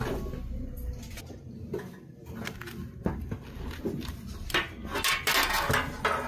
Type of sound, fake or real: real